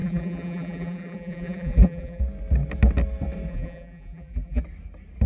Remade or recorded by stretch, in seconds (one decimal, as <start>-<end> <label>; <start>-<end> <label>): 0.0-2.2 remade; 2.2-3.5 recorded; 3.5-4.6 remade; 4.6-5.3 recorded